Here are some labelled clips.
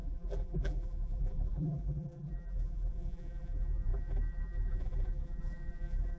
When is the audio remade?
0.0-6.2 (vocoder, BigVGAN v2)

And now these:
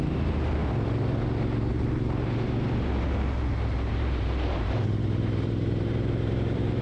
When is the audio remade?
0.0-0.6 (vocoder, BigVGAN v2); 3.9-6.8

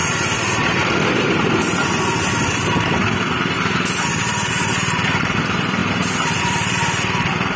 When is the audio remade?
4.5-7.6 (vocoder, BigVGAN v2)